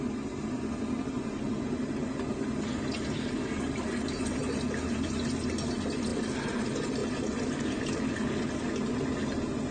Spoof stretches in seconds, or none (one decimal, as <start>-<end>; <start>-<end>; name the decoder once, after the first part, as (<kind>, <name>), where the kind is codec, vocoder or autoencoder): none